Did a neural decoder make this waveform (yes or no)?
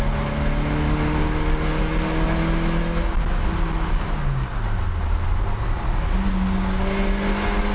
no